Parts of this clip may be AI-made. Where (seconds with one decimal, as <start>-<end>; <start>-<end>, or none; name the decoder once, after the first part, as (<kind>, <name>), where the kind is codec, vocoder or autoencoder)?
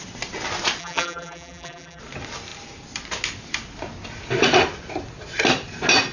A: 0.8-2.0 (vocoder, BigVGAN v2)